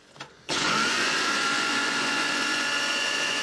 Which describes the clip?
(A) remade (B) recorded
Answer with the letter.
A